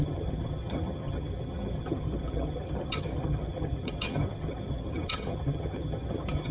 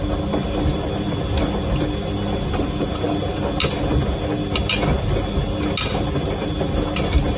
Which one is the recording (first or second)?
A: second